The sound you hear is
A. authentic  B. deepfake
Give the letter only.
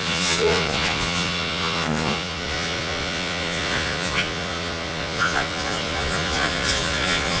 B